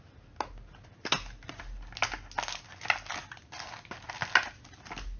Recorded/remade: recorded